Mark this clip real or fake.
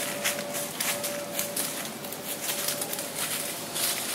real